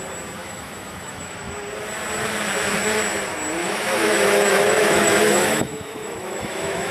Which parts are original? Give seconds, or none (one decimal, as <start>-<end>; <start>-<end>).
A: 0.0-0.4; 1.5-3.6